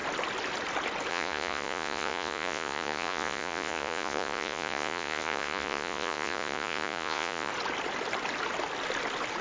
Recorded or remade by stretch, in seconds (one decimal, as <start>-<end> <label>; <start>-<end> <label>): 0.0-1.1 recorded; 1.1-7.5 remade; 7.5-9.4 recorded